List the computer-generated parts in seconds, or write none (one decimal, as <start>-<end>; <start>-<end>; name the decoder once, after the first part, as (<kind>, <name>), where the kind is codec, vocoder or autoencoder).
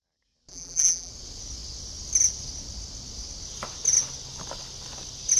0.5-1.1 (vocoder, BigVGAN v2)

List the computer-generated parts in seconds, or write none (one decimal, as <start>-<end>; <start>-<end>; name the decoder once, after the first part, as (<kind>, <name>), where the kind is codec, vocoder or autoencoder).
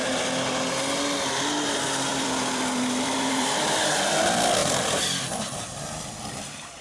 2.1-3.8 (vocoder, BigVGAN v2); 4.6-5.2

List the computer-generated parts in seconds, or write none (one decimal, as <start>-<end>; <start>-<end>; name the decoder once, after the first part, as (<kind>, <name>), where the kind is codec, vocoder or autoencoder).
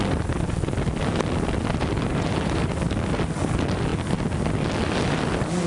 2.1-2.7 (vocoder, BigVGAN v2)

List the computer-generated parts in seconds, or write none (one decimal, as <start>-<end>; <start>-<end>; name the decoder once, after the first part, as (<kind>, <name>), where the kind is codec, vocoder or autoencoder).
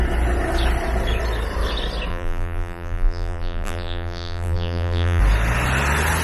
2.1-5.2 (vocoder, BigVGAN v2)